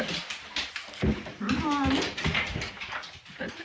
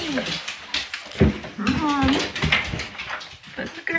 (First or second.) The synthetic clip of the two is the first